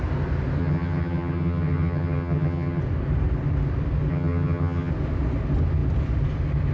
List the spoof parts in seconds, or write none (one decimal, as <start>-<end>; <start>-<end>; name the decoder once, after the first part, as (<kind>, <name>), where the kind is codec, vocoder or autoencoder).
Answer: 0.6-2.8 (vocoder, HiFi-GAN); 4.1-4.9